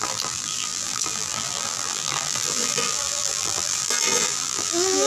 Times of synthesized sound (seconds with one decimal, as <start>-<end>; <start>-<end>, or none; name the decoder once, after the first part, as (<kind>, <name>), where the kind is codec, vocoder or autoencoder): 0.0-5.1 (vocoder, BigVGAN v2)

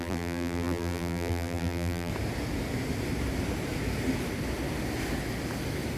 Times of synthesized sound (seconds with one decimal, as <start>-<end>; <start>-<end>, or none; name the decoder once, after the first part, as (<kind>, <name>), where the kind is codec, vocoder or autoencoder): 0.0-2.1 (vocoder, BigVGAN v2)

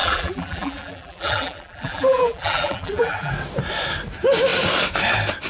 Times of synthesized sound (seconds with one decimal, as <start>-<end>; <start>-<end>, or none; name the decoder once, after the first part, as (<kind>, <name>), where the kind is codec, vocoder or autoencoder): 0.0-3.3 (vocoder, BigVGAN v2)